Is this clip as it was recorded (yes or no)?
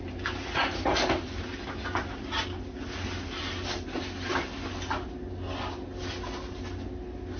yes